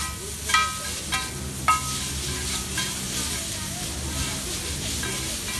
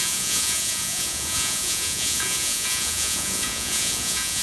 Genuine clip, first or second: first